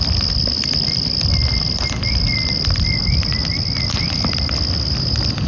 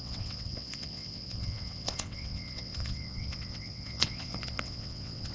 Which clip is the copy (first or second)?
second